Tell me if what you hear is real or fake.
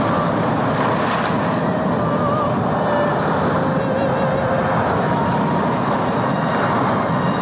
real